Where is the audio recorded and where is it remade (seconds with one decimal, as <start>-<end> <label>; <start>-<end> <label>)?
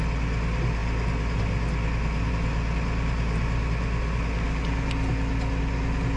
0.0-6.2 recorded